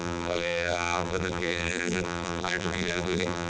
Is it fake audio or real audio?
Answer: fake